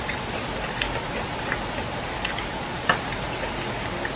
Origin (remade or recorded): recorded